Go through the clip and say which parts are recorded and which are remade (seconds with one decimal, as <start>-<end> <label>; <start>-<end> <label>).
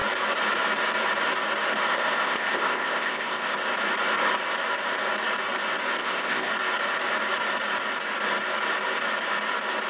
0.0-1.9 recorded; 1.9-3.5 remade; 3.5-6.0 recorded; 6.0-6.5 remade; 6.5-9.9 recorded